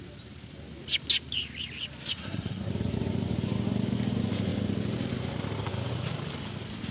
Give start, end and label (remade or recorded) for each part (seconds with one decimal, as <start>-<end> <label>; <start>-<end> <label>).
0.0-2.1 recorded; 2.1-2.7 remade; 2.7-6.9 recorded